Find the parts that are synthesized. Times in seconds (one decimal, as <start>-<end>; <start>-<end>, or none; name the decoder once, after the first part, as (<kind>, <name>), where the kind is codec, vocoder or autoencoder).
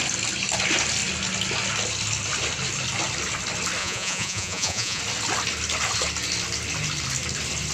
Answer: 3.8-5.0 (vocoder, Vocos)